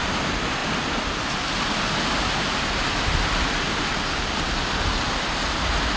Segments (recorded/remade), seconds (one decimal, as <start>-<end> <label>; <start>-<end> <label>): 0.0-6.0 recorded